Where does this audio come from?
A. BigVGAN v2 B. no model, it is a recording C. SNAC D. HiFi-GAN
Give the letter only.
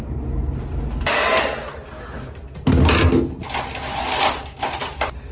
B